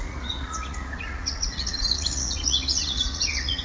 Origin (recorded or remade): remade